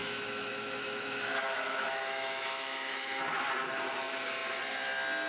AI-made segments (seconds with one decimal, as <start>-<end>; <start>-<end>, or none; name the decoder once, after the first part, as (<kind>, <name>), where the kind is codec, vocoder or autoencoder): 0.0-3.2 (autoencoder, DAC-VAE)